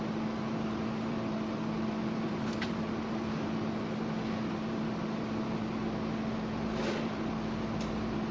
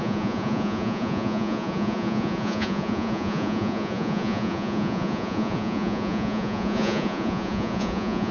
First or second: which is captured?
first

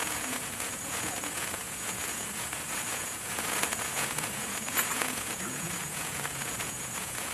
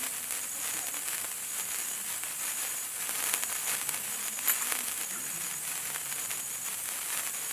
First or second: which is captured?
second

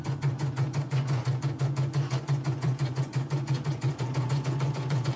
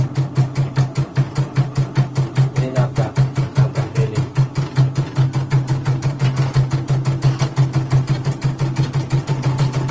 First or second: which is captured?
second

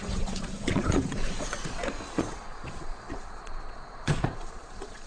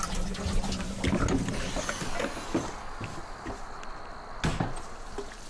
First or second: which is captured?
second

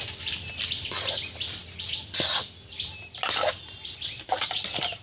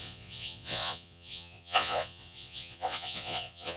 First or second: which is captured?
first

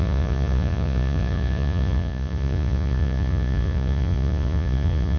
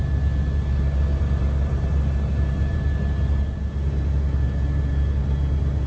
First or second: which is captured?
second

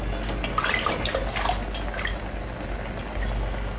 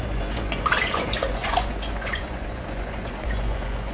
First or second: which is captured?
first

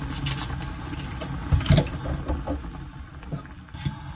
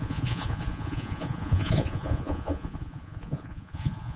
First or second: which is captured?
first